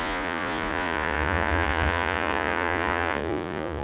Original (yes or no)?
no